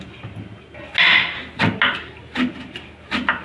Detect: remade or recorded recorded